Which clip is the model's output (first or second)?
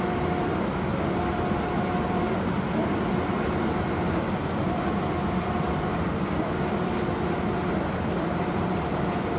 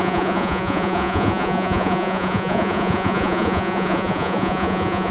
second